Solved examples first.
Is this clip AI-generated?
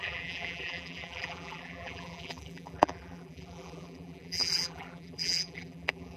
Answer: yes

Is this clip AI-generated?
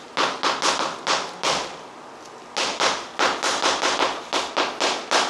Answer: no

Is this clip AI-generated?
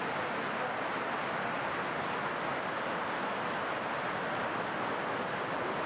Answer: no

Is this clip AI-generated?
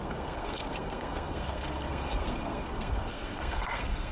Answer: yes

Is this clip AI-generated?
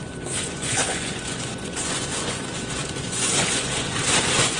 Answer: yes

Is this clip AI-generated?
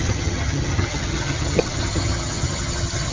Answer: yes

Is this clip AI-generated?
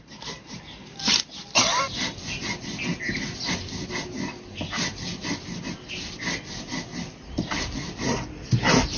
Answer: no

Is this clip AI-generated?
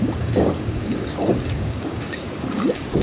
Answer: yes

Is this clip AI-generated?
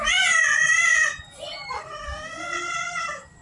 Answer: no